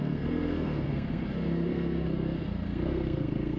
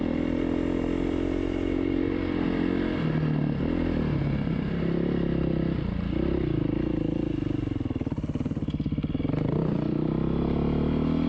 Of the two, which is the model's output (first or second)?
first